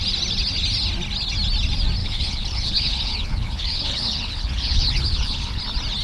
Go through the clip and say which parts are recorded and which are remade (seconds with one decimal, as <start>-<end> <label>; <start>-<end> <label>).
0.0-2.0 recorded; 2.0-5.6 remade; 5.6-6.0 recorded